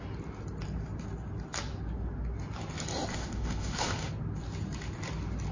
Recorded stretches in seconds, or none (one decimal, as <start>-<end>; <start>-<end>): 0.0-3.1; 4.1-5.5